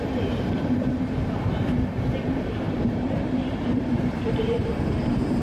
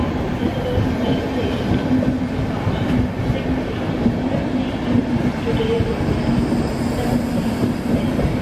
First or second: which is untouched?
second